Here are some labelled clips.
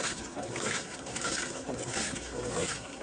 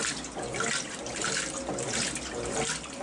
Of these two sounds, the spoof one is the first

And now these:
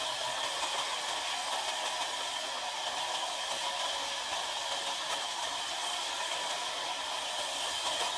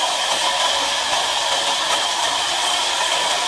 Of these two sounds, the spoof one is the second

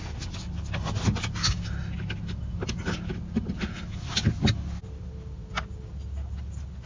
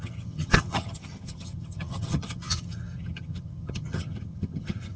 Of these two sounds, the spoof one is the second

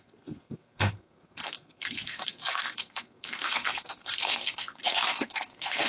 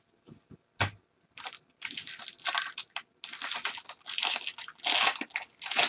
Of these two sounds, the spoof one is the first